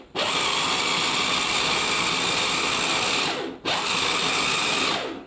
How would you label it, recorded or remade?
recorded